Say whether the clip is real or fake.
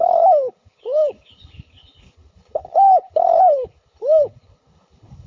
fake